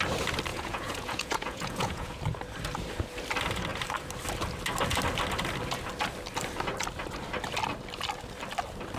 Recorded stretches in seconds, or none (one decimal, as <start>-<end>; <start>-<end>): 0.0-0.5; 2.2-9.0